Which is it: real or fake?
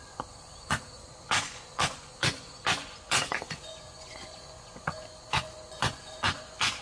fake